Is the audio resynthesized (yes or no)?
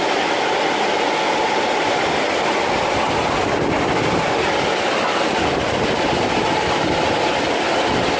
no